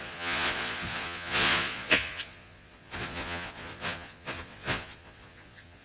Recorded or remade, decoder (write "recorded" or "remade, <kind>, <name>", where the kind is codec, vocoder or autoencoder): remade, vocoder, Vocos